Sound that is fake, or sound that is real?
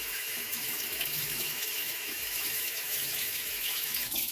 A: fake